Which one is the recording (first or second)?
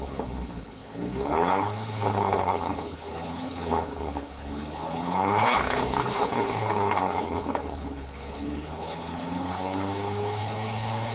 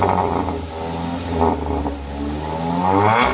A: second